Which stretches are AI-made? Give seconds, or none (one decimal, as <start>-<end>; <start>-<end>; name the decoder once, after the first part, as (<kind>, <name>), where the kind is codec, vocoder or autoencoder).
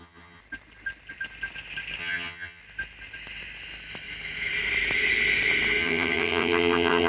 0.0-0.4 (vocoder, HiFi-GAN); 2.0-2.6; 5.8-7.1